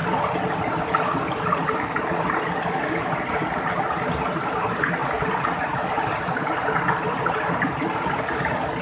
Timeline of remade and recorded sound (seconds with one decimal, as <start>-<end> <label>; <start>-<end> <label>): 0.0-8.8 recorded